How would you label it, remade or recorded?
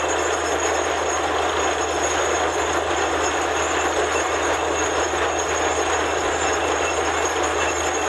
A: recorded